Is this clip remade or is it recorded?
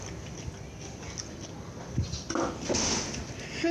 recorded